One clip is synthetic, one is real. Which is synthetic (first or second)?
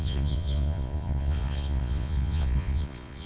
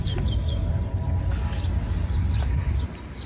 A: first